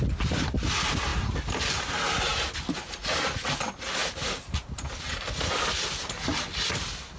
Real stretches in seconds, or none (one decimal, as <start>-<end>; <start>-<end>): 0.0-7.2

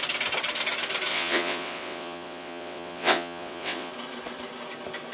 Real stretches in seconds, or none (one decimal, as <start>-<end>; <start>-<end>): 0.0-1.1; 3.9-5.1

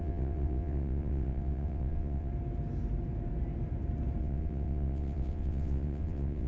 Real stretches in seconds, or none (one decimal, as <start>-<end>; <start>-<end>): 2.3-4.2